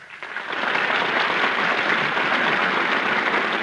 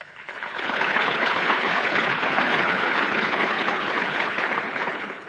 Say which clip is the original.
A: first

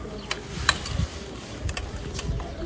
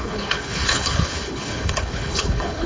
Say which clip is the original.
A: first